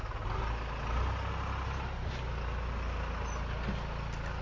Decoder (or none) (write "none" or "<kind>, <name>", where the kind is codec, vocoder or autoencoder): none